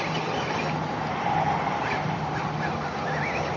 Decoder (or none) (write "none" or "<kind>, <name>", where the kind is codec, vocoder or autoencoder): none